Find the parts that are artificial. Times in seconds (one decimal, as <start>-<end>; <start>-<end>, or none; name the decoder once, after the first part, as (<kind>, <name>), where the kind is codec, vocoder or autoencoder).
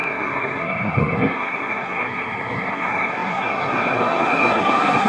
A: 0.0-5.1 (codec, SNAC)